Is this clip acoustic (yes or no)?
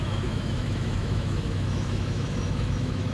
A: no